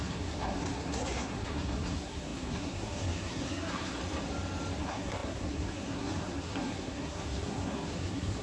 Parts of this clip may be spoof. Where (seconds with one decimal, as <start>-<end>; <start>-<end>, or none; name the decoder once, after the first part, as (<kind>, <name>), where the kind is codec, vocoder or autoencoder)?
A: 0.0-4.0 (codec, SNAC); 4.8-8.4